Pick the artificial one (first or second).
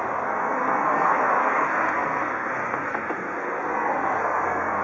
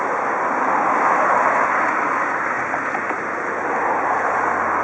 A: first